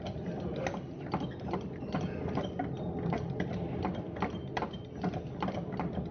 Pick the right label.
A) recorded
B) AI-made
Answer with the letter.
A